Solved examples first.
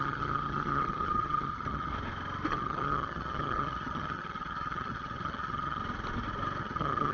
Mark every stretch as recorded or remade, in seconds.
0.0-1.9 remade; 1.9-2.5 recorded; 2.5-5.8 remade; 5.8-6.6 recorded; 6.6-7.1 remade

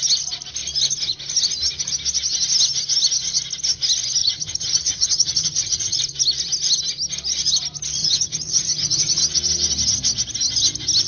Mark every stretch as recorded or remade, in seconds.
0.0-4.2 recorded; 4.2-6.0 remade; 6.0-8.0 recorded; 8.0-9.2 remade; 9.2-11.1 recorded

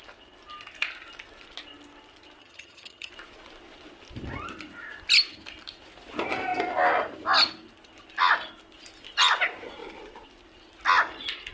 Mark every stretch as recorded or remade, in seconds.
0.0-2.4 recorded; 2.4-3.1 remade; 3.1-11.5 recorded